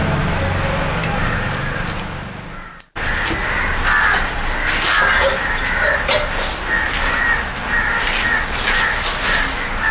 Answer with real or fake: real